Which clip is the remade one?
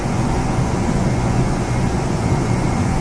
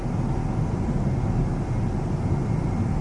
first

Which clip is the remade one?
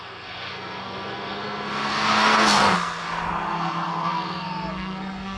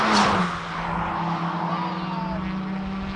first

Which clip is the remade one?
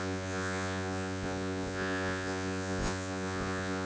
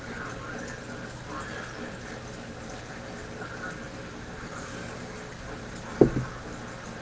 first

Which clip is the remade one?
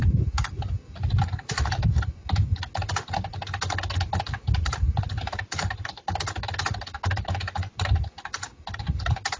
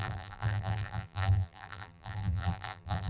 second